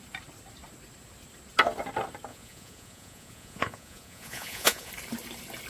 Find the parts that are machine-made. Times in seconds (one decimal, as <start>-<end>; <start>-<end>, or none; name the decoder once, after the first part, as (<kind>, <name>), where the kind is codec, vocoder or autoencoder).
2.3-4.9 (vocoder, Vocos)

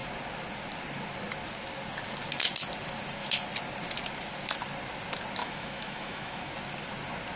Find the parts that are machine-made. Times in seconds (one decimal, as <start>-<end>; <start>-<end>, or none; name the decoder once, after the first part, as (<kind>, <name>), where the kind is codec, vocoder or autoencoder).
5.4-6.5 (autoencoder, DAC-VAE)